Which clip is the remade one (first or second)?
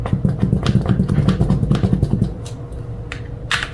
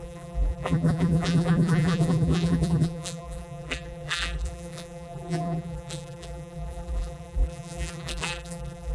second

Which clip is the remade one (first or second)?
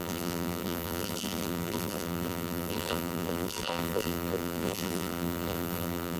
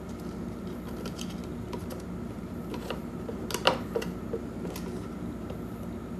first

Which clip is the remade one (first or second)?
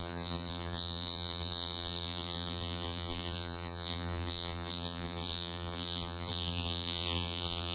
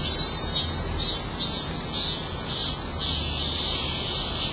first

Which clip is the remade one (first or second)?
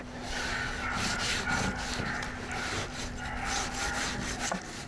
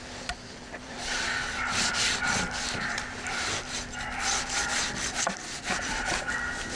second